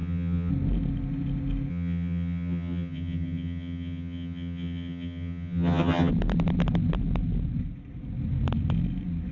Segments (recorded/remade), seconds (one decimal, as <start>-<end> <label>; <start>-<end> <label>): 0.0-0.5 remade; 0.5-1.7 recorded; 1.7-6.1 remade; 6.1-9.3 recorded